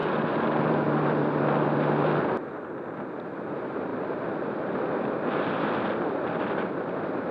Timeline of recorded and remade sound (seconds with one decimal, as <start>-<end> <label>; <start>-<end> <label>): 0.0-7.3 recorded